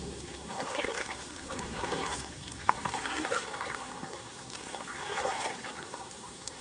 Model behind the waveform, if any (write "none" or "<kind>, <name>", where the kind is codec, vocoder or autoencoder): codec, SNAC